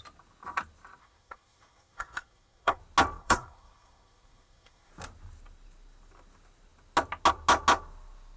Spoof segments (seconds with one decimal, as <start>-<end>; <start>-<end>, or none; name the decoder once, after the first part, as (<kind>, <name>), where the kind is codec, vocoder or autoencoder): 1.0-2.8 (codec, SNAC); 3.2-4.9